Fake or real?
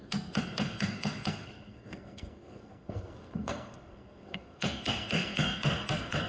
fake